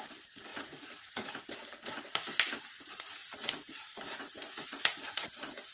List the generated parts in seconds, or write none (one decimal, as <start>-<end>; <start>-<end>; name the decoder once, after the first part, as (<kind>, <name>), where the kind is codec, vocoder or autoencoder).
0.5-1.4 (vocoder, Vocos); 3.2-5.7